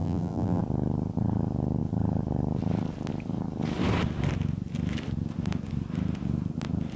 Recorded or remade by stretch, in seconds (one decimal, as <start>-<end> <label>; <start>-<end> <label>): 0.0-0.6 remade; 0.6-7.0 recorded